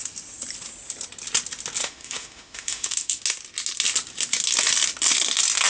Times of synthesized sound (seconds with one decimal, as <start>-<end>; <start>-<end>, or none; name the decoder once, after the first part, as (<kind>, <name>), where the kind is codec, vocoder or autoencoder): 1.8-3.2 (autoencoder, DAC-VAE)

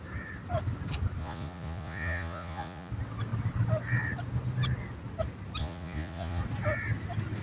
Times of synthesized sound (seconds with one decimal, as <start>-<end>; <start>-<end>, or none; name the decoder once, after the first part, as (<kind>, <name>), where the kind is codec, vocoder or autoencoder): 1.2-2.9 (vocoder, Vocos); 5.6-6.4

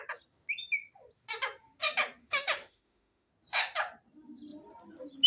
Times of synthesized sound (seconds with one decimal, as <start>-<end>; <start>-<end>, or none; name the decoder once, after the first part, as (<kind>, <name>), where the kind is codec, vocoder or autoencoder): 2.2-3.3 (autoencoder, DAC-VAE)